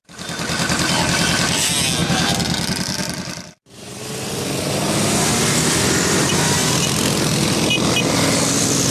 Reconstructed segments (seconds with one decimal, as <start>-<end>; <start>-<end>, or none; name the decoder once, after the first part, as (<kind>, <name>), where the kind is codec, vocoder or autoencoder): none